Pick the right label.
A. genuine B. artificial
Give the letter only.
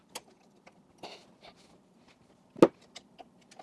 A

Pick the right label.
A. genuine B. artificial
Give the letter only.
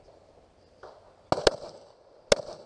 A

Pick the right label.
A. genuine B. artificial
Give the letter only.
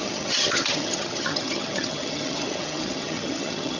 B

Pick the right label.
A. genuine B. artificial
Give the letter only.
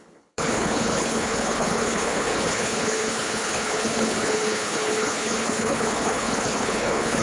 B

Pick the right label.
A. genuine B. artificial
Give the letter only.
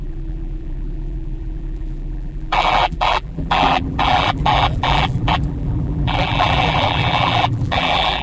B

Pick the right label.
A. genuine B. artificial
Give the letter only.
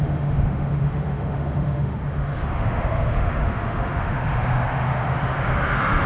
B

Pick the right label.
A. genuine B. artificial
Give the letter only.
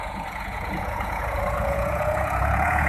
B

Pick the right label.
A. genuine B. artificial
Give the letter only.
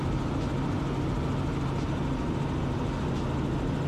A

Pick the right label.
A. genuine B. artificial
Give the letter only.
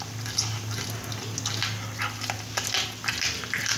A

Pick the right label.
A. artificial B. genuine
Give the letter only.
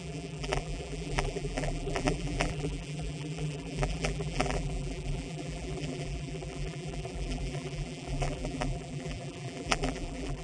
A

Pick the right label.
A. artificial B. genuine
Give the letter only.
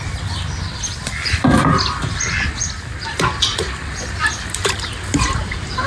A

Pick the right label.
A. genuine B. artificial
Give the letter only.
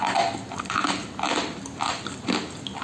A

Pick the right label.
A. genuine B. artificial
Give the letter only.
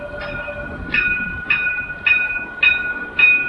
A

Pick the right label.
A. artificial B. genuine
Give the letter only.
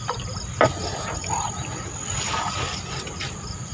B